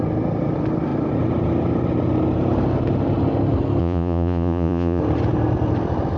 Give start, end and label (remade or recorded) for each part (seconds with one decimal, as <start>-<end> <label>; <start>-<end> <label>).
0.0-3.8 recorded; 3.8-5.0 remade; 5.0-6.2 recorded